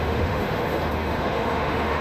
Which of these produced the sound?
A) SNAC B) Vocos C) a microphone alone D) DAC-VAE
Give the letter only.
D